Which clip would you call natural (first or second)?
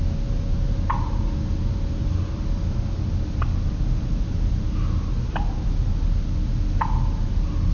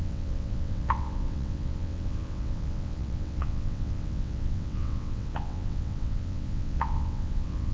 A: first